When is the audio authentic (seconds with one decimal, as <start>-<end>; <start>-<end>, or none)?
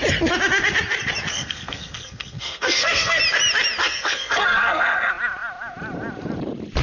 0.0-1.3; 3.2-3.8; 5.1-6.8